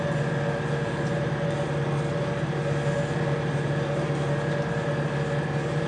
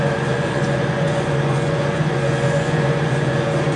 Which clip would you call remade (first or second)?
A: second